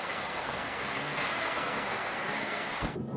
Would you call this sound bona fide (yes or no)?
no